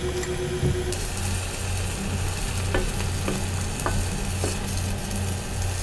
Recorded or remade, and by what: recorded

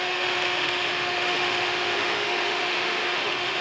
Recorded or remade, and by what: remade, autoencoder, DAC-VAE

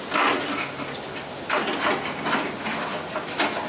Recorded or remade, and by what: recorded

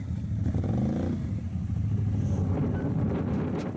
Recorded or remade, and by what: recorded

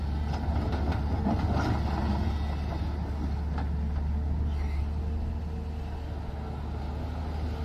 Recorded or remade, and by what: recorded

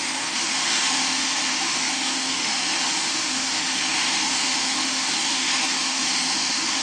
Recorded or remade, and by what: remade, autoencoder, DAC-VAE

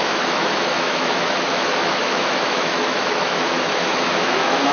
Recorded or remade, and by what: remade, autoencoder, DAC-VAE